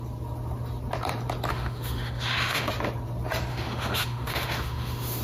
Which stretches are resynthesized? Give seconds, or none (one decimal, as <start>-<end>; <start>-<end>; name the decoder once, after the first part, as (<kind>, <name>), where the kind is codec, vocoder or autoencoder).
1.5-2.7 (autoencoder, DAC-VAE); 3.5-5.2